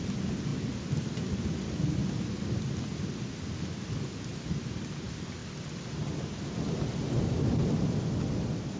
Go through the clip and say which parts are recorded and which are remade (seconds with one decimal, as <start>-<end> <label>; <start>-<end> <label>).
0.0-8.8 recorded